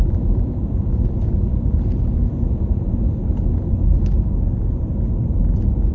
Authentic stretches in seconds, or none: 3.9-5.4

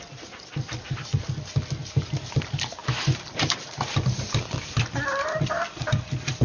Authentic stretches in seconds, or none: 0.0-6.4